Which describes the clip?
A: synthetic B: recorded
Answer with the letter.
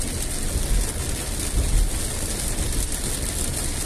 B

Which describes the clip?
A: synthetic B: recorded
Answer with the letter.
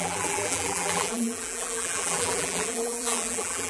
A